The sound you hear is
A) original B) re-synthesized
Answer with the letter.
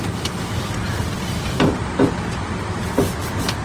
A